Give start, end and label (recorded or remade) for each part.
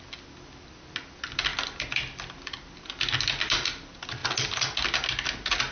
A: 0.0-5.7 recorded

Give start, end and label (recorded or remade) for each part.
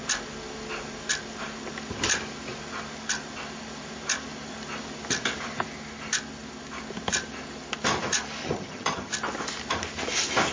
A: 0.0-8.4 recorded; 8.4-9.1 remade; 9.1-10.5 recorded